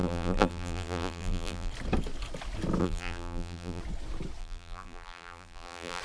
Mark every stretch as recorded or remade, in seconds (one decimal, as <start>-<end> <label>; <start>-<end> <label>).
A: 0.0-1.7 remade; 1.7-2.8 recorded; 2.8-3.8 remade; 3.8-4.4 recorded; 4.4-6.0 remade